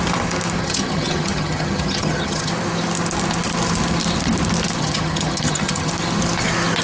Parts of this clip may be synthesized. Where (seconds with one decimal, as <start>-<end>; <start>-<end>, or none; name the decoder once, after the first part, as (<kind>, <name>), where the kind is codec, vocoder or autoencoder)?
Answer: 0.6-2.5 (vocoder, HiFi-GAN); 4.8-5.9